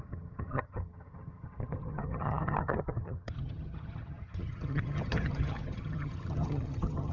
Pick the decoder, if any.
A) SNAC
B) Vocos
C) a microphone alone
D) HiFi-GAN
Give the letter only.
D